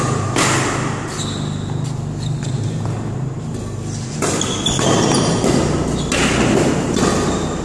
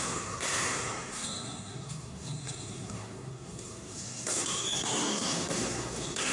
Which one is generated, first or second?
second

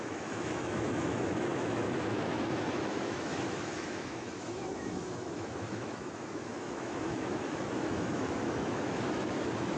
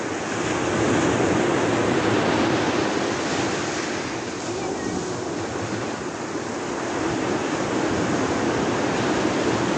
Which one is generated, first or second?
first